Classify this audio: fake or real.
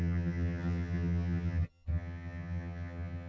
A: fake